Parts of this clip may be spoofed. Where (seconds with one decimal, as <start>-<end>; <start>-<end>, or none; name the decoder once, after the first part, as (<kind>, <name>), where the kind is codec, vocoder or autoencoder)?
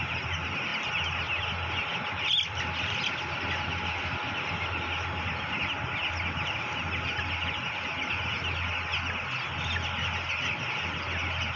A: none